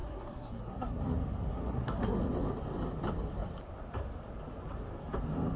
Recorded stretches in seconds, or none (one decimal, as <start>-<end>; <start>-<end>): 1.0-1.5; 2.2-5.6